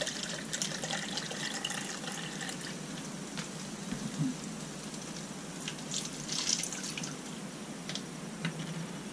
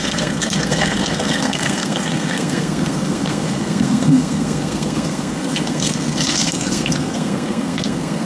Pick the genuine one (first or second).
first